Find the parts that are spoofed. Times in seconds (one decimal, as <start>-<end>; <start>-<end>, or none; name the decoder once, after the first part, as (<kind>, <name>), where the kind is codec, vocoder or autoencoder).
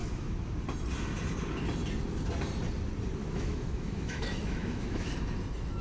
0.0-0.6 (autoencoder, DAC-VAE); 3.2-5.1